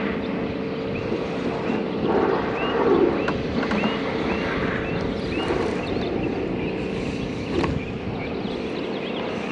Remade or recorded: recorded